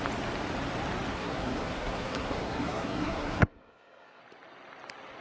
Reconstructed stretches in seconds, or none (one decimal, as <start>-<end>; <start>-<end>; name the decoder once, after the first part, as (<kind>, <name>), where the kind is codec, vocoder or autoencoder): 1.1-4.2 (codec, SNAC)